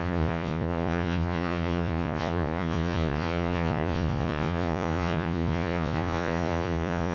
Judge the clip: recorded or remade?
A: remade